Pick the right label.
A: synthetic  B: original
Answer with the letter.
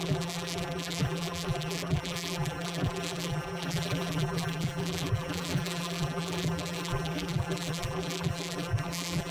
A